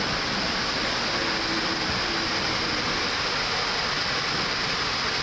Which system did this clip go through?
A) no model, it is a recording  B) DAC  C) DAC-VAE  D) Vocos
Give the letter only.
A